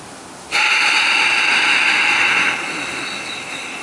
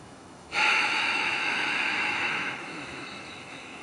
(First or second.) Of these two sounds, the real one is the first